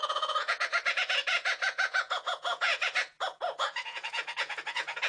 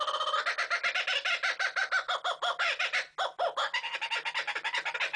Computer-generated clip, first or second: first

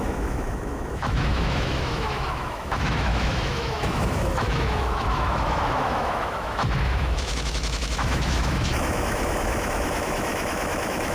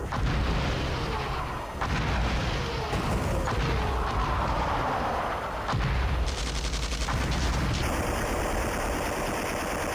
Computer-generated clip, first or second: first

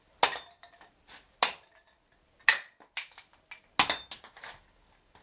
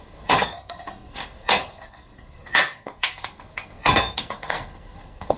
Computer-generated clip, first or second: second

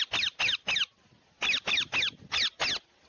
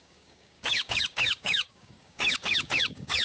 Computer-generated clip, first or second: second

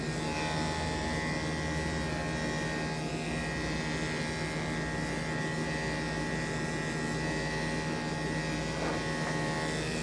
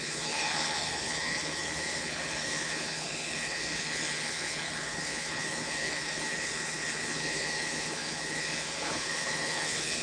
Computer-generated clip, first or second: second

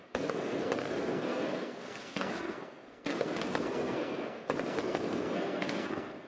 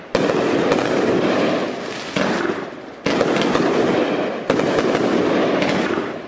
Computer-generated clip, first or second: first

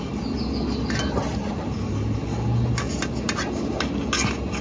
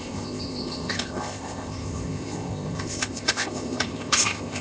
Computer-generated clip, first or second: second